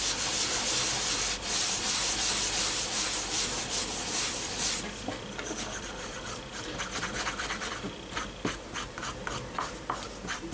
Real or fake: fake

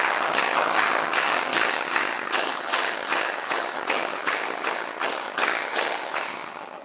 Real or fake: fake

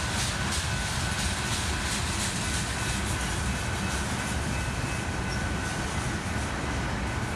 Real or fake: real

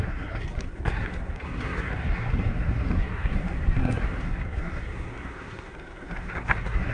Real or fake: fake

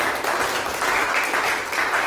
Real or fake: real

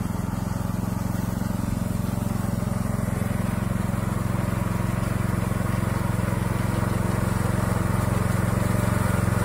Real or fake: real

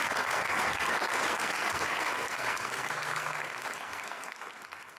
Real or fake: fake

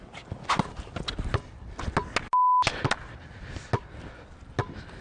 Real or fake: real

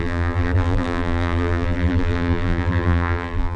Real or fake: fake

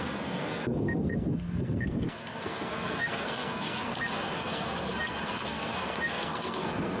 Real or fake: fake